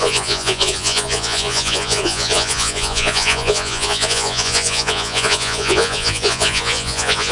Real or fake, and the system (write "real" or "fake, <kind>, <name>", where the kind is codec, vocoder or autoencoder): fake, vocoder, Vocos